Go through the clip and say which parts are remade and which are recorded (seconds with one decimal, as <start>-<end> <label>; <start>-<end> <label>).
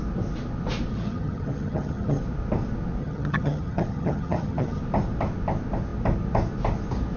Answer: 0.0-0.9 recorded; 0.9-2.2 remade; 2.2-3.0 recorded; 3.0-4.8 remade; 4.8-7.2 recorded